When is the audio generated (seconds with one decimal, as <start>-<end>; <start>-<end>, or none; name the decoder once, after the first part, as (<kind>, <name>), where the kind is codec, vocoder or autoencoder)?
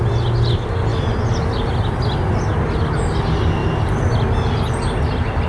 none